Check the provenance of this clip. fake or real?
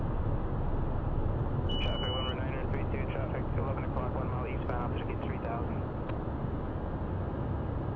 real